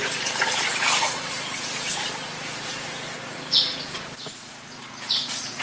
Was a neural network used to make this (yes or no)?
yes